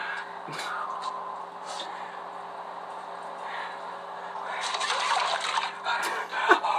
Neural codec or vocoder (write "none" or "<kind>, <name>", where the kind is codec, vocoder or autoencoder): none